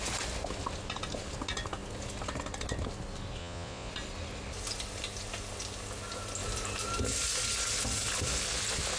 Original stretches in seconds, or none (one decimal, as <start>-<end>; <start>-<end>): 0.0-3.4; 3.9-9.0

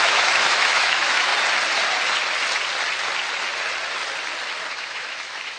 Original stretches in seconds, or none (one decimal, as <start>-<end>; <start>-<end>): 1.3-4.7

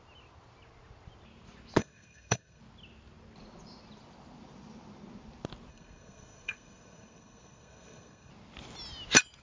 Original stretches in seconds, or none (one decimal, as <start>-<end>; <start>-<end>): 0.0-1.8; 2.6-5.7; 8.3-9.4

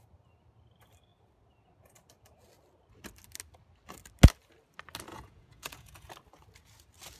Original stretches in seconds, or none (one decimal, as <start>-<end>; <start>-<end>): 0.0-5.1; 6.1-7.2

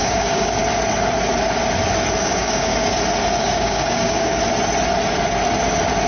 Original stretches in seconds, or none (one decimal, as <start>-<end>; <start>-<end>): 0.6-2.2; 2.7-3.4; 4.4-6.1

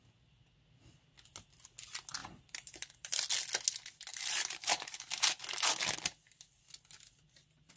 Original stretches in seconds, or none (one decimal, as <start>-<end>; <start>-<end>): 0.0-2.2; 3.2-4.1; 5.4-7.8

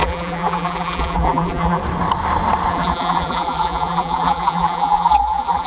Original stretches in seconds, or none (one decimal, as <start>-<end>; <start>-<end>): 1.8-2.7

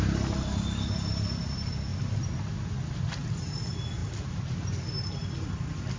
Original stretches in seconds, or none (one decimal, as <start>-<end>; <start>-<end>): 0.0-6.0